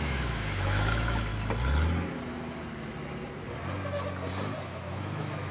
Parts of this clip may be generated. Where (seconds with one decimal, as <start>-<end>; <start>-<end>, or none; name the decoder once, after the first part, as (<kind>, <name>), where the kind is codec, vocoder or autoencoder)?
0.0-1.3 (autoencoder, DAC-VAE); 4.6-5.5